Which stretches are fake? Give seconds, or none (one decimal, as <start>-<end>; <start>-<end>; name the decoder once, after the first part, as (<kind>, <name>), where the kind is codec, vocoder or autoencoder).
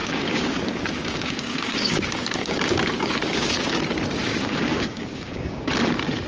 0.0-3.8 (codec, DAC); 4.2-5.7